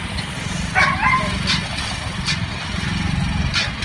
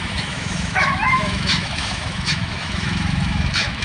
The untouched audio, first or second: first